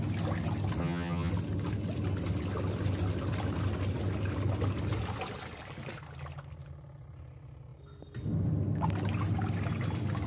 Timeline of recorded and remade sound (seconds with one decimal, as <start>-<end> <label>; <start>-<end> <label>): 0.0-0.8 recorded; 0.8-1.3 remade; 1.3-10.3 recorded